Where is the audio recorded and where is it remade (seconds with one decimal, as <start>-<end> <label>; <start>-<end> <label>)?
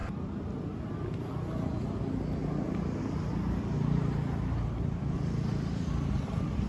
0.0-6.7 recorded